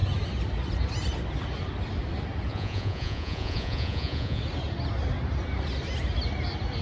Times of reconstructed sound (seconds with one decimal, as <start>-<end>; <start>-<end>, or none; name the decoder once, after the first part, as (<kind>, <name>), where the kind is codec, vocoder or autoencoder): 2.5-4.4 (vocoder, Vocos)